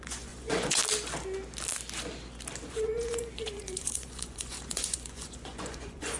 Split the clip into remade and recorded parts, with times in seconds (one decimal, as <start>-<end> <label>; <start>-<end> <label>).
0.0-0.8 remade; 0.8-2.7 recorded; 2.7-6.2 remade